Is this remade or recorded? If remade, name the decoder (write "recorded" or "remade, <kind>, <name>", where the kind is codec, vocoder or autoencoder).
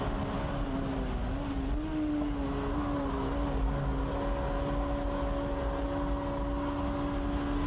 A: recorded